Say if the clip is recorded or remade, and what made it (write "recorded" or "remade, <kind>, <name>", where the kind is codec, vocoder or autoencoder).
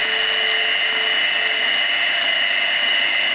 recorded